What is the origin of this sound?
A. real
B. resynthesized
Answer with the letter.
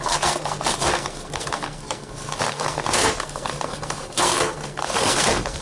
B